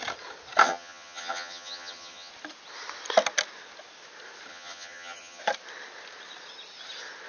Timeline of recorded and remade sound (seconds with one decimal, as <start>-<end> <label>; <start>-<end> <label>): 0.0-0.6 recorded; 0.6-2.3 remade; 2.3-4.5 recorded; 4.5-5.4 remade; 5.4-7.3 recorded